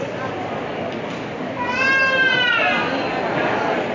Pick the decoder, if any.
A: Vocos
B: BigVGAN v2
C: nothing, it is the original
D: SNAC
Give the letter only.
C